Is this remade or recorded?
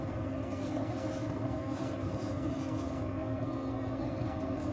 remade